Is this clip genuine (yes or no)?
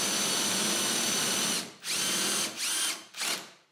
yes